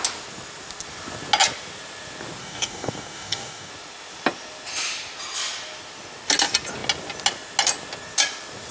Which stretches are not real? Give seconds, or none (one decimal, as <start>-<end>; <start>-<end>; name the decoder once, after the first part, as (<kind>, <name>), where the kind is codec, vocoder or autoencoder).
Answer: 2.4-3.7 (codec, DAC)